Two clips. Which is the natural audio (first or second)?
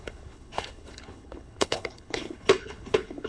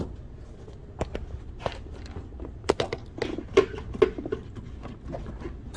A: second